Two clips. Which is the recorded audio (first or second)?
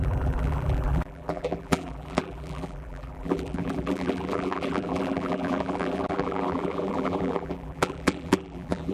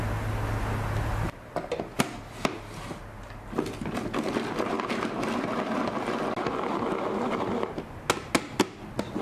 second